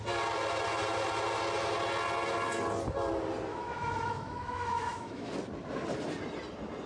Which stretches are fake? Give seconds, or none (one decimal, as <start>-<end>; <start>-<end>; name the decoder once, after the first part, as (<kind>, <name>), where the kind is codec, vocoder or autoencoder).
3.5-5.3 (autoencoder, DAC-VAE)